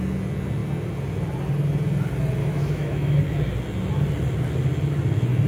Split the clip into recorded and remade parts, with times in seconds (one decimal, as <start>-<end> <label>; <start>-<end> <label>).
0.0-2.4 recorded; 2.4-3.2 remade; 3.2-5.5 recorded